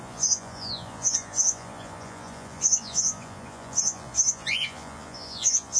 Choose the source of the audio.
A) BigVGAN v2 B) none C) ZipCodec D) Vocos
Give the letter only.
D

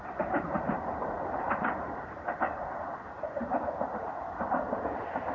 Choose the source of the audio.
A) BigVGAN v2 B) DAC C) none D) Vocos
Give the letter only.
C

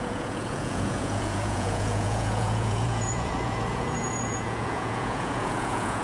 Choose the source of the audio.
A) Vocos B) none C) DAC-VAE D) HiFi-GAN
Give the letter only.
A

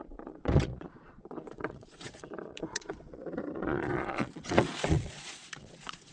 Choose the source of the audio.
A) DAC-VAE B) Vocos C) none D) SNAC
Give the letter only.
B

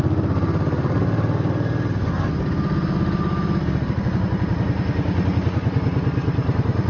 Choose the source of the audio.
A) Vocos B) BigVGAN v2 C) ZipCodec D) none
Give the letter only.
D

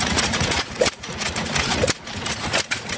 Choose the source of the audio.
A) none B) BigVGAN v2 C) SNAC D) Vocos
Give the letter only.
D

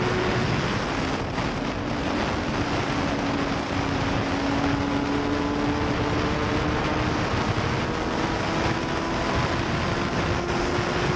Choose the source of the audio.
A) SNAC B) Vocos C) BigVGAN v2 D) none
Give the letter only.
D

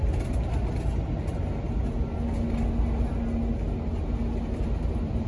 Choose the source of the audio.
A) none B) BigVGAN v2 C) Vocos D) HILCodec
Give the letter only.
A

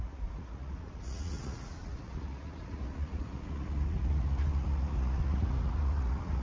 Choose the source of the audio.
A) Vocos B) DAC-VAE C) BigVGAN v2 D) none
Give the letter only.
A